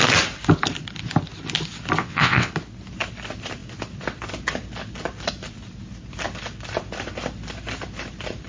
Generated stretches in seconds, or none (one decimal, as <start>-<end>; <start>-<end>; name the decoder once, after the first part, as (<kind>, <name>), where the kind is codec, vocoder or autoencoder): 2.0-2.5 (vocoder, WaveNeXt)